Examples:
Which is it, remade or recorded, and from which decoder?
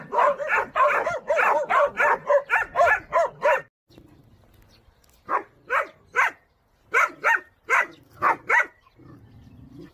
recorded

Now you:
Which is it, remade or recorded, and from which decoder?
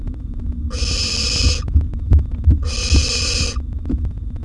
recorded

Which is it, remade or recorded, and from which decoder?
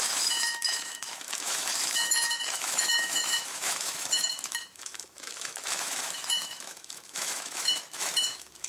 remade, autoencoder, DAC-VAE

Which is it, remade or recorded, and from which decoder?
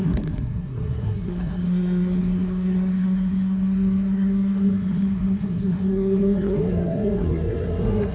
remade, codec, SNAC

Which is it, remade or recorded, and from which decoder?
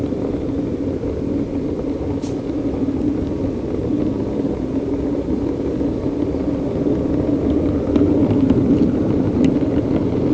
recorded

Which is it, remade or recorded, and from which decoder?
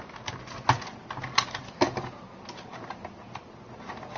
recorded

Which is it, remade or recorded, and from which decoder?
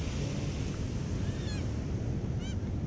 recorded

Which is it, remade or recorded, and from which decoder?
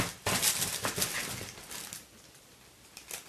recorded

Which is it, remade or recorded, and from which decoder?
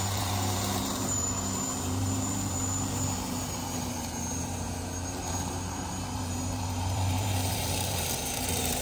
remade, vocoder, BigVGAN v2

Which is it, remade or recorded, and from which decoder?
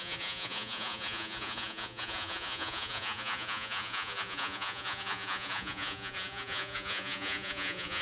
remade, vocoder, Vocos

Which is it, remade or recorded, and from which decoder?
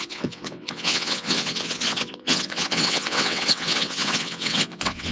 remade, vocoder, WaveNeXt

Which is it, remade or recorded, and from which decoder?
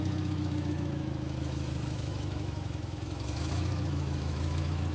remade, autoencoder, DAC-VAE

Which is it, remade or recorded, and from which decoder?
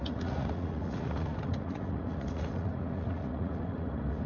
remade, vocoder, Vocos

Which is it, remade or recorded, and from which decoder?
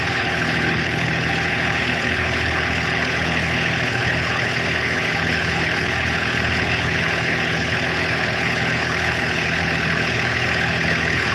remade, codec, HILCodec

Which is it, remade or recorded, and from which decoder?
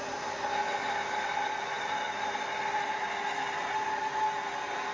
recorded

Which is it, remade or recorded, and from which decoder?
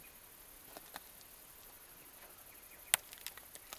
recorded